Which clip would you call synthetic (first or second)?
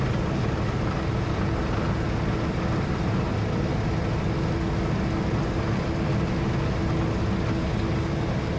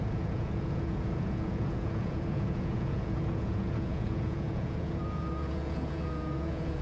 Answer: second